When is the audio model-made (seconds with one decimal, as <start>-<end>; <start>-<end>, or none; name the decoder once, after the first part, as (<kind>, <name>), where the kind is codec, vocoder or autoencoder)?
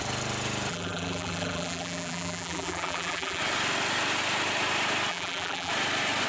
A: 0.7-3.4 (vocoder, BigVGAN v2); 5.1-5.7